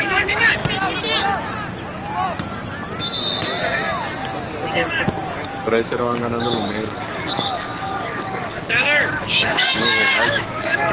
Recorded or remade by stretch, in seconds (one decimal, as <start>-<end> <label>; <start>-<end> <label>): 0.0-0.6 remade; 0.6-4.7 recorded; 4.7-10.9 remade